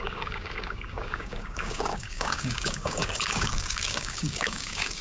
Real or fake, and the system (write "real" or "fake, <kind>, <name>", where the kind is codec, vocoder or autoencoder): fake, codec, DAC